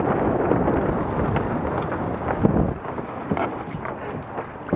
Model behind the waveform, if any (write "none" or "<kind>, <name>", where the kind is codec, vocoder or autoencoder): none